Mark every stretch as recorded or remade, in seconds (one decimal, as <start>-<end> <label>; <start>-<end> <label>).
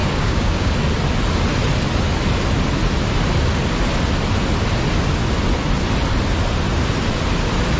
0.0-0.7 remade; 0.7-7.8 recorded